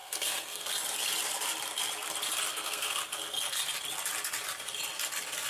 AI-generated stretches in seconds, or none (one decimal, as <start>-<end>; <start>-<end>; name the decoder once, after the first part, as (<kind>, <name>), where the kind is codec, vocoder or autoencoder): 0.0-0.7 (codec, SNAC); 2.5-3.0